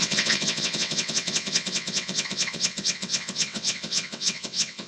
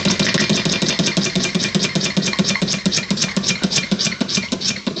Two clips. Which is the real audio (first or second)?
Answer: second